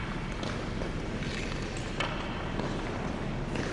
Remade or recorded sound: recorded